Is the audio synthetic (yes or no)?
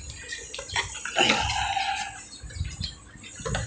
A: no